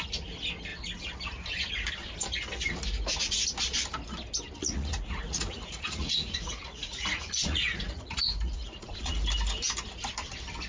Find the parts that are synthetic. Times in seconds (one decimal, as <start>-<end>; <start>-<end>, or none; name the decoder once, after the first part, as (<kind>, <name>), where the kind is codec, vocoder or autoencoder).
4.6-9.2 (vocoder, Vocos)